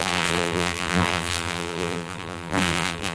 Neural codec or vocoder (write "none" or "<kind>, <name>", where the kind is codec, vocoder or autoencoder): vocoder, BigVGAN v2